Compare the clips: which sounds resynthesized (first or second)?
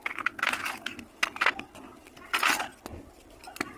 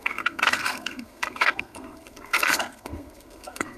second